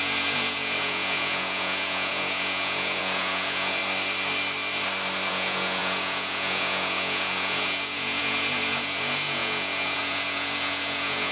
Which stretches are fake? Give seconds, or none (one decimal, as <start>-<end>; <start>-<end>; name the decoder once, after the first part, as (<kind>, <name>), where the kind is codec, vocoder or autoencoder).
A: 0.0-3.8 (vocoder, Vocos); 5.3-11.3